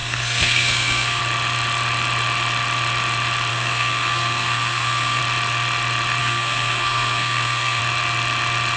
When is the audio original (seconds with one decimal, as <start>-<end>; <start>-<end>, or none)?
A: 1.2-3.5; 5.2-6.2; 7.8-8.8